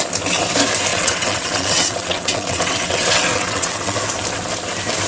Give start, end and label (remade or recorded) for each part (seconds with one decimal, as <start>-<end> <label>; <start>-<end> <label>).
0.0-0.9 recorded; 0.9-4.0 remade; 4.0-5.1 recorded